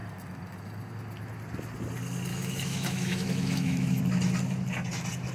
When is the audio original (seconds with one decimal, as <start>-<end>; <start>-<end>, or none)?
0.0-2.3; 4.0-5.3